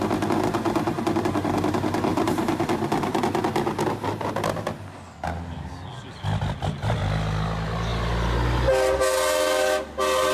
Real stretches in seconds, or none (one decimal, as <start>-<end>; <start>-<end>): 0.0-2.1; 3.2-10.3